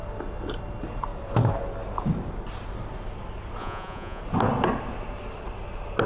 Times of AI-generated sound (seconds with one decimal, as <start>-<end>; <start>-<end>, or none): 3.6-4.2